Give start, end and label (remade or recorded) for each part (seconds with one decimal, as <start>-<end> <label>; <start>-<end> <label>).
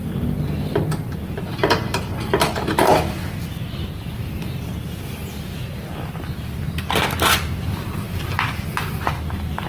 0.0-9.7 recorded